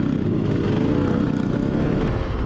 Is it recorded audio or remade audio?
recorded